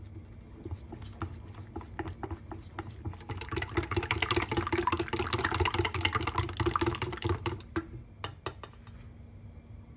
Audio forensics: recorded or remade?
recorded